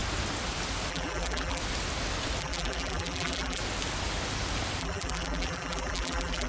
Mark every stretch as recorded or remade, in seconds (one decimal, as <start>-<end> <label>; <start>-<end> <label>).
0.0-0.9 recorded; 0.9-1.6 remade; 1.6-2.4 recorded; 2.4-3.6 remade; 3.6-4.8 recorded; 4.8-6.5 remade